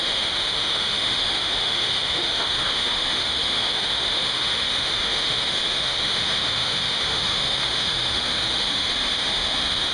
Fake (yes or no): yes